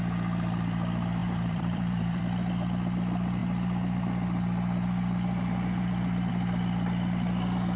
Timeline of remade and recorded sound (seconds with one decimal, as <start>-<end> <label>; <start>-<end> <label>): 0.0-1.2 recorded; 1.2-2.2 remade; 2.2-7.8 recorded